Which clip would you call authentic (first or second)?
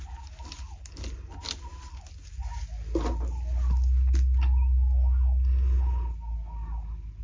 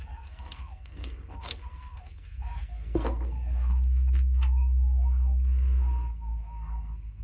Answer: first